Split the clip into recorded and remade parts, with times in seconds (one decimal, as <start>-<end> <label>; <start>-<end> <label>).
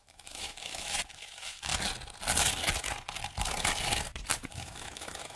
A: 0.0-1.7 remade; 1.7-4.5 recorded; 4.5-5.4 remade